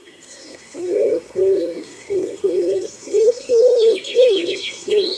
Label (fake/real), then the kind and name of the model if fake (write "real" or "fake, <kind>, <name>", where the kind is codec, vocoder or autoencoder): fake, codec, SNAC